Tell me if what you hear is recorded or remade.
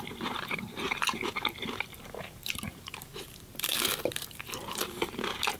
remade